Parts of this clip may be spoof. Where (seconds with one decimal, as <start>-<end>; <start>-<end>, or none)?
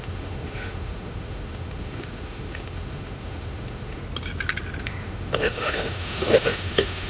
0.0-4.0; 4.8-7.1